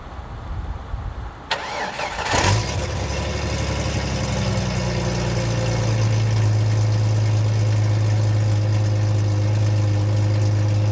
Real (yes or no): yes